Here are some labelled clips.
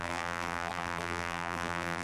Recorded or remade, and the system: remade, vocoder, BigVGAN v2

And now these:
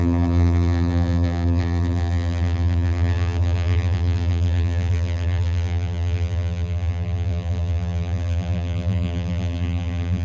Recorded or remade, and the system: remade, vocoder, BigVGAN v2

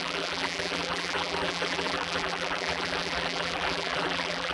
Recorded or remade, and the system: remade, vocoder, BigVGAN v2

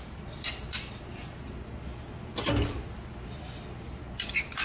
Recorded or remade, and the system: recorded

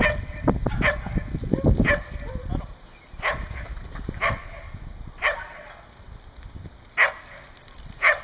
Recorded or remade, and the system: recorded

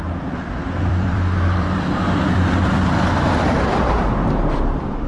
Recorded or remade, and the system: remade, vocoder, BigVGAN v2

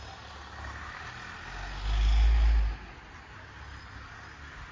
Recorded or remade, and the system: recorded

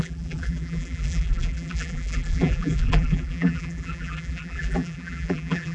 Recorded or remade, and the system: remade, vocoder, BigVGAN v2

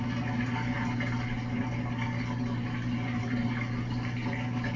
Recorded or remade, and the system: recorded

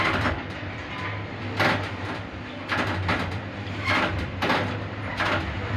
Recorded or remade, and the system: remade, vocoder, BigVGAN v2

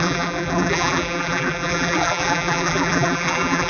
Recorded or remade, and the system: remade, vocoder, BigVGAN v2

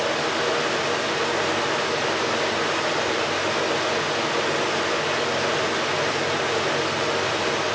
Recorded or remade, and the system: recorded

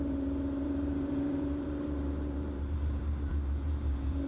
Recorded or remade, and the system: remade, vocoder, BigVGAN v2